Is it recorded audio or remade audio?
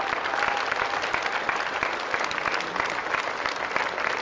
recorded